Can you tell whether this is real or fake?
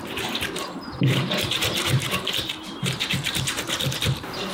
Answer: fake